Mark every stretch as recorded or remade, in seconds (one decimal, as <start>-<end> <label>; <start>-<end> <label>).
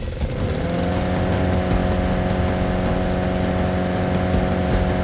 0.0-5.0 recorded